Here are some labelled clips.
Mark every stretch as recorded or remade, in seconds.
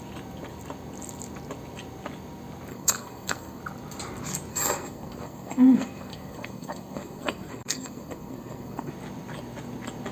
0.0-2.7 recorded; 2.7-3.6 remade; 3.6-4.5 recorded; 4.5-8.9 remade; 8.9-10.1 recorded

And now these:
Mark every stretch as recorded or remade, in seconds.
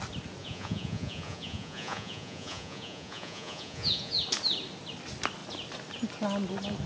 0.0-0.4 recorded; 0.4-4.2 remade; 4.2-6.9 recorded